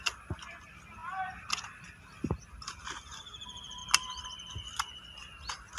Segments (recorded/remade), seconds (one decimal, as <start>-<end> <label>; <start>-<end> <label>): 0.0-5.8 recorded